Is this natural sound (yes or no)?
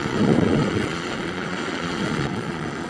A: no